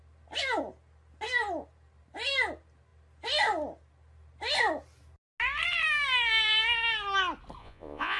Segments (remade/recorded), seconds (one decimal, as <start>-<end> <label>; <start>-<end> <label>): 0.0-7.6 recorded; 7.6-8.2 remade